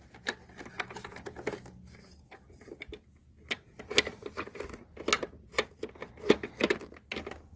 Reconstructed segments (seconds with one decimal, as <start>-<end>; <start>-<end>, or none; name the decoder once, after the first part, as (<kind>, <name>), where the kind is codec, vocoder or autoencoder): none